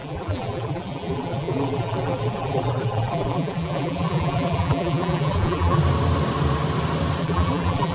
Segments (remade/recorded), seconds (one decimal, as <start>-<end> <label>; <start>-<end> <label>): 0.0-5.8 remade; 5.8-7.2 recorded; 7.2-7.9 remade